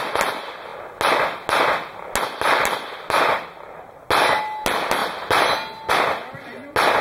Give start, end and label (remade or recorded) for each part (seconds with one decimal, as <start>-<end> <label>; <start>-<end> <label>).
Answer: 0.0-7.0 recorded